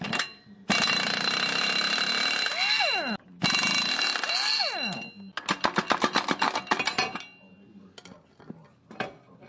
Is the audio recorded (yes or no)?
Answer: yes